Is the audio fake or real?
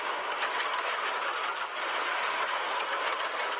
real